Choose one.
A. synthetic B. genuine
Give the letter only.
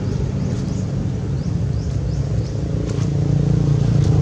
B